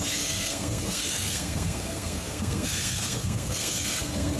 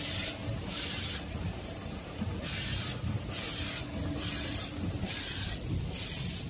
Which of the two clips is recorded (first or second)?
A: second